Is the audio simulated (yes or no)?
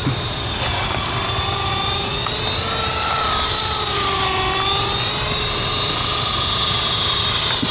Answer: no